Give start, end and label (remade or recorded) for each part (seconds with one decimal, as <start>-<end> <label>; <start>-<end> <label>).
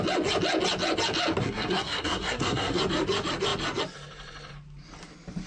0.0-1.4 recorded; 1.4-2.8 remade; 2.8-5.5 recorded